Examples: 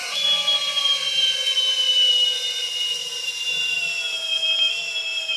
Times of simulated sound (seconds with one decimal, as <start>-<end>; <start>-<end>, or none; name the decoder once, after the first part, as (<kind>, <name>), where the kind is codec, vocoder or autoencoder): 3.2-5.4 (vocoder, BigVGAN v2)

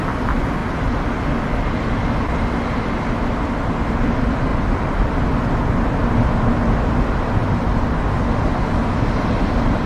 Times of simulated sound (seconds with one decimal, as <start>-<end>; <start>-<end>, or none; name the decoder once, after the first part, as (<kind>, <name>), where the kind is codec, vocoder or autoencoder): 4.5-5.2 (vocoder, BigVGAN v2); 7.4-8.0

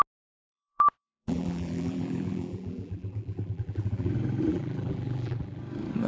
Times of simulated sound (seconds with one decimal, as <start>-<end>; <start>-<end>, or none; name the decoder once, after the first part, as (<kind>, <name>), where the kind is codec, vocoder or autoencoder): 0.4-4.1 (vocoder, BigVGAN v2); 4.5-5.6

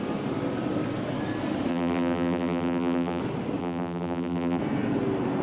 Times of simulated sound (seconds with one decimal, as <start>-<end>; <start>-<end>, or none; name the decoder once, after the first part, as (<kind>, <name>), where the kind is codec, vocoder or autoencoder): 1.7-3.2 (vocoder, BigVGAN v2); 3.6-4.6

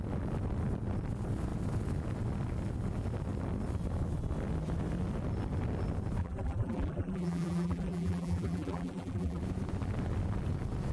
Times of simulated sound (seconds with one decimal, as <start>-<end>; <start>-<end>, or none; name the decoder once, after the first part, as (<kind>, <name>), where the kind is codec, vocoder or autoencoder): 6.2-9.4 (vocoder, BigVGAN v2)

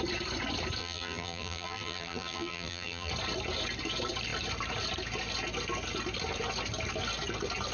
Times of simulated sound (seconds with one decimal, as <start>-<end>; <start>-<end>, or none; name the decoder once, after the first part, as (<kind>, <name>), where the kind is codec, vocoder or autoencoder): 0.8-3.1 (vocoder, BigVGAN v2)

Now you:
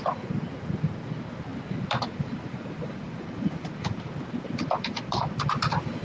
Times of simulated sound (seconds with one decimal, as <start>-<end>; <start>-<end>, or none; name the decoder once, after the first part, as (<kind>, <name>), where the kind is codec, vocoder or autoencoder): 1.5-4.5 (vocoder, BigVGAN v2)

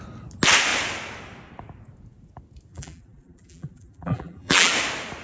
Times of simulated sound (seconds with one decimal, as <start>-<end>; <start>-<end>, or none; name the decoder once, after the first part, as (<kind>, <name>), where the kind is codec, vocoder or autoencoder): 2.7-4.7 (vocoder, BigVGAN v2)